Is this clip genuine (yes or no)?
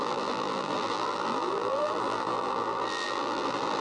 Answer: no